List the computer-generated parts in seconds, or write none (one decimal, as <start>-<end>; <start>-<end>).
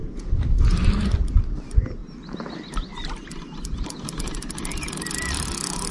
0.0-0.6